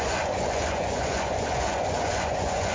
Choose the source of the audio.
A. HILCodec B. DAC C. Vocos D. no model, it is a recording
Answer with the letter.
C